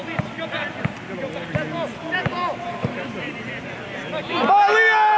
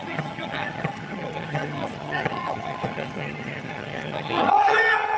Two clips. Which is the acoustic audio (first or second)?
first